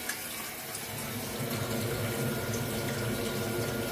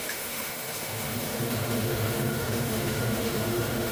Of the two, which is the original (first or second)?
first